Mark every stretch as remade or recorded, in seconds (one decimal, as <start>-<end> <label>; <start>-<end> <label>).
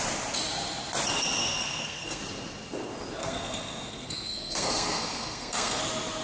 0.0-1.4 recorded; 1.4-2.2 remade; 2.2-3.2 recorded; 3.2-5.8 remade; 5.8-6.2 recorded